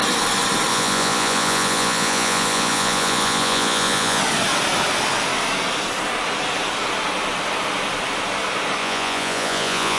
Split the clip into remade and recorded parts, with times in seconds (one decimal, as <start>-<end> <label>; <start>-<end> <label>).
0.0-0.7 recorded; 0.7-4.2 remade; 4.2-8.8 recorded; 8.8-10.0 remade

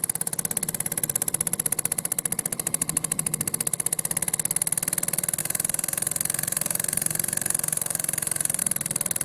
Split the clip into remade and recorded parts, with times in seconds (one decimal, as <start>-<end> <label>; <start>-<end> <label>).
0.0-5.4 recorded; 5.4-8.6 remade; 8.6-9.2 recorded

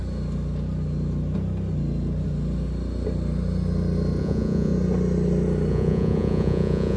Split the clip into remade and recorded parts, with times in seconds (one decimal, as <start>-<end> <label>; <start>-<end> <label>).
0.0-4.2 recorded; 4.2-4.7 remade; 4.7-5.7 recorded; 5.7-7.0 remade

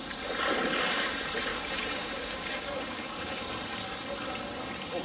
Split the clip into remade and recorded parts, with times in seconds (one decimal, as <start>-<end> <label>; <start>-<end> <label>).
0.0-1.5 recorded; 1.5-3.4 remade; 3.4-5.0 recorded

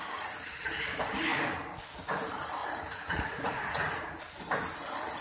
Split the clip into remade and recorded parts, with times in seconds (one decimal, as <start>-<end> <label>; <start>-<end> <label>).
0.0-2.6 recorded; 2.6-4.2 remade; 4.2-5.2 recorded

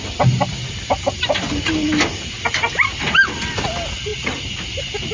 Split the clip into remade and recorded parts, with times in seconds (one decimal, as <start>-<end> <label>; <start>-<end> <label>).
0.0-5.1 recorded

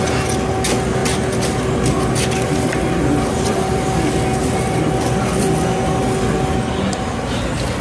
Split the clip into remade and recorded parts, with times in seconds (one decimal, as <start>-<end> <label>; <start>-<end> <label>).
0.0-7.8 recorded

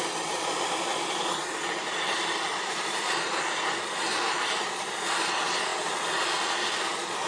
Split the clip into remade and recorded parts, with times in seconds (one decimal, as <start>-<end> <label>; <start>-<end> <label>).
0.0-0.9 recorded; 0.9-5.3 remade; 5.3-7.3 recorded